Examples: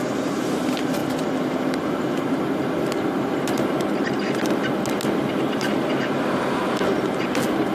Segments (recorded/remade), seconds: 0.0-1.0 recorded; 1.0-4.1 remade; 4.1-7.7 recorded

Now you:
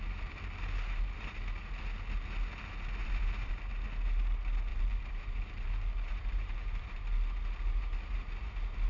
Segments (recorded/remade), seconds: 0.0-3.0 recorded; 3.0-3.5 remade; 3.5-4.7 recorded; 4.7-7.0 remade; 7.0-8.9 recorded

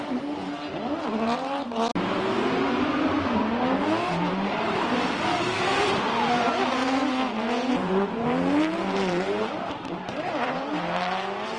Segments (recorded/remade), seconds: 0.0-1.9 remade; 1.9-3.2 recorded; 3.2-6.8 remade; 6.8-7.7 recorded; 7.7-11.6 remade

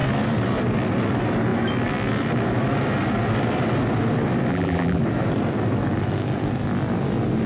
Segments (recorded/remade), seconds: 0.0-4.5 recorded; 4.5-5.0 remade; 5.0-7.5 recorded

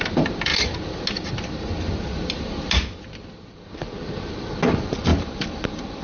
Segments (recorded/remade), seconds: 0.0-0.5 remade; 0.5-4.1 recorded; 4.1-6.0 remade

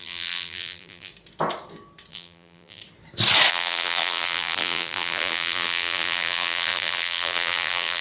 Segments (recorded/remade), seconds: 0.0-1.1 remade; 1.1-2.1 recorded; 2.1-2.8 remade; 2.8-3.5 recorded; 3.5-8.0 remade